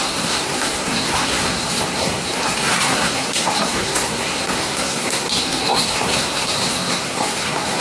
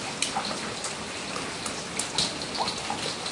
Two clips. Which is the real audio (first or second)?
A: second